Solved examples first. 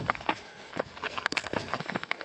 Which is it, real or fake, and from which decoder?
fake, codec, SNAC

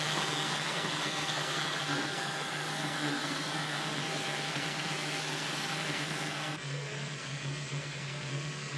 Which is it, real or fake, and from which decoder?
fake, codec, SNAC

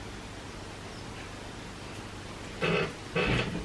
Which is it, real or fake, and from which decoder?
real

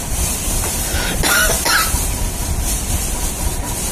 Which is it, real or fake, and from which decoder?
real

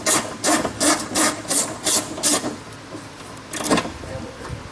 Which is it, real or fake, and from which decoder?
real